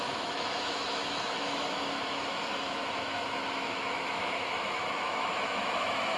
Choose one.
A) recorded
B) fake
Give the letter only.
B